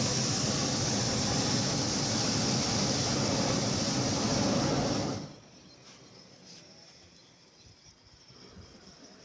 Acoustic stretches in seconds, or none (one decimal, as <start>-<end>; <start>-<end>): 0.0-9.2